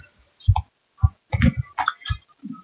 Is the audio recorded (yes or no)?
yes